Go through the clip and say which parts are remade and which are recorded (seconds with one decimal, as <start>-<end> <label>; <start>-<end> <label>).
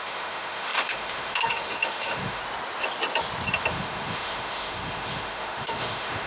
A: 0.0-2.4 remade; 2.4-3.7 recorded; 3.7-6.3 remade